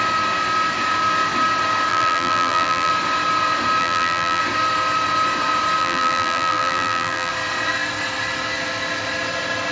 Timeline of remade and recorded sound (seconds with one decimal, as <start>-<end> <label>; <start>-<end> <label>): 0.0-1.9 recorded; 1.9-2.9 remade; 2.9-3.8 recorded; 3.8-4.4 remade; 4.4-5.8 recorded; 5.8-7.3 remade; 7.3-9.7 recorded